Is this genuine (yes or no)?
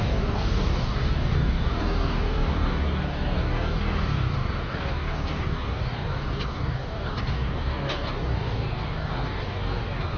no